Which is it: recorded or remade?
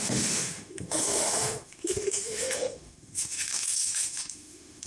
remade